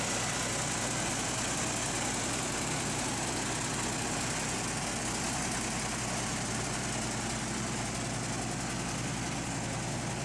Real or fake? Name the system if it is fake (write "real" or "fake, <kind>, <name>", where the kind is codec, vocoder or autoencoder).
real